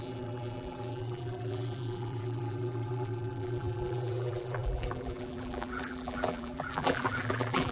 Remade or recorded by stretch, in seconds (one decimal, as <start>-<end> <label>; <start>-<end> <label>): 0.0-7.7 remade